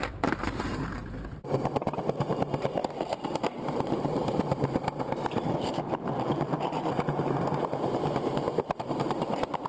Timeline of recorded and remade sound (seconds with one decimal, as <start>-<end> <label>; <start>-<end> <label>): 0.0-2.8 remade; 2.8-3.6 recorded; 3.6-9.7 remade